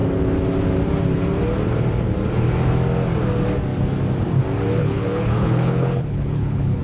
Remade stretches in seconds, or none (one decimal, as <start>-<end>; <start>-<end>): 4.8-6.8